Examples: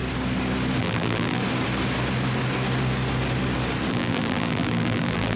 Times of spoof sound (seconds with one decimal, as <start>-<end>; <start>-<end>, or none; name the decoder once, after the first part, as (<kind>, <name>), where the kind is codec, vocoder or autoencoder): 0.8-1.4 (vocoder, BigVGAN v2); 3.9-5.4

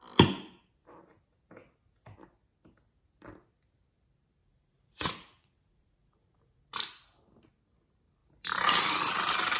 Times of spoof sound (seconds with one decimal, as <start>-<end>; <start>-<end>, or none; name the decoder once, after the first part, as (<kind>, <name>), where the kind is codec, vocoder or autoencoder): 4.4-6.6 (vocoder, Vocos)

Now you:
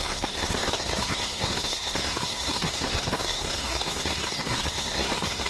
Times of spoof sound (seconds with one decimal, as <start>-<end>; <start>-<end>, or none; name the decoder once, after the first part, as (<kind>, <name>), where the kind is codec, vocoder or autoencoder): 0.0-5.5 (codec, SNAC)